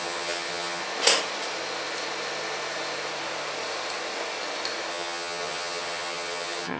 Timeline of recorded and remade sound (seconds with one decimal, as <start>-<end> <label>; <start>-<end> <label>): 0.0-0.8 remade; 0.8-4.9 recorded; 4.9-6.8 remade